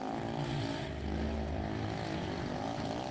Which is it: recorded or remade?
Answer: recorded